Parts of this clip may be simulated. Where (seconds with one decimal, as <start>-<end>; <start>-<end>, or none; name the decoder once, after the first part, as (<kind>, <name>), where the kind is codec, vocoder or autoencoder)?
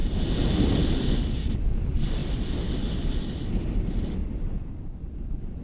4.2-5.6 (vocoder, BigVGAN v2)